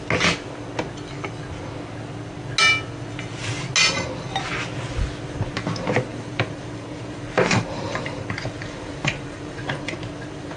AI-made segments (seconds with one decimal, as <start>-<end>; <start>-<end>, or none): 6.1-10.6